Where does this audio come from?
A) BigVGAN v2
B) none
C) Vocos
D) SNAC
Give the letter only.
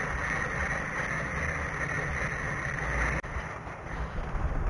B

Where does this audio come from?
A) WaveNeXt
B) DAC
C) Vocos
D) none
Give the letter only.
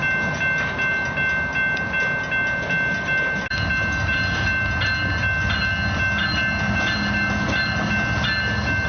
D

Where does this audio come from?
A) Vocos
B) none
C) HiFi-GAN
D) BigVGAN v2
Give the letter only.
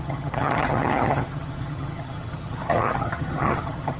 C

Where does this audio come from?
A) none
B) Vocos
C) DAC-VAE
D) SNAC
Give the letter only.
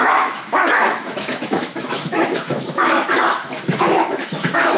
C